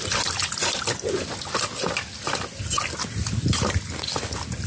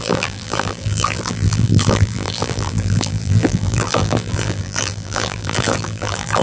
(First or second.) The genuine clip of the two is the first